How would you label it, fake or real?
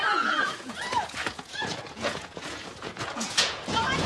fake